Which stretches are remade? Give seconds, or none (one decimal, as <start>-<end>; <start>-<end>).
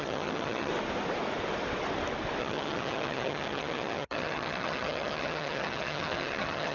0.0-0.7; 2.4-6.7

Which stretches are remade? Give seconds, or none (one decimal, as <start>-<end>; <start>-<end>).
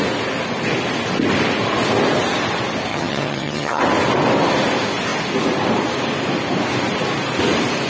2.9-3.8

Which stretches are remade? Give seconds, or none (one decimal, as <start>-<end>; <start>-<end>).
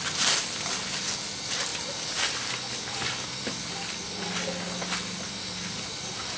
none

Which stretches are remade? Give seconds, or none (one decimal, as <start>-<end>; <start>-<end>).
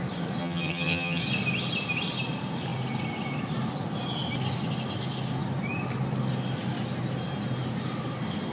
0.4-1.2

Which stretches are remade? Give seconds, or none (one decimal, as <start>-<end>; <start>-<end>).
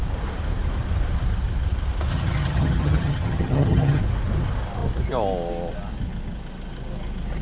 2.1-4.0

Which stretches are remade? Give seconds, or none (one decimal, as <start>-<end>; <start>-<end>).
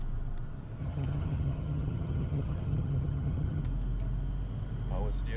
0.8-3.6